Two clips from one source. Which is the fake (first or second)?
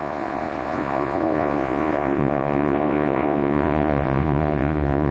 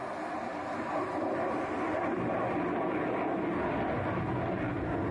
first